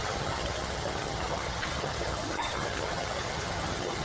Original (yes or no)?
no